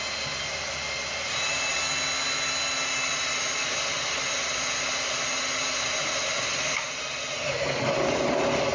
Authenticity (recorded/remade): recorded